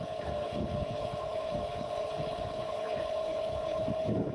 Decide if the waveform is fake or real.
fake